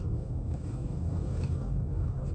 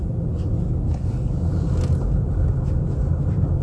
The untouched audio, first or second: second